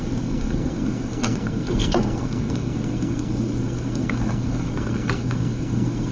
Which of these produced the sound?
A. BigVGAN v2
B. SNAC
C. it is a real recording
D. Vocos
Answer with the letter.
B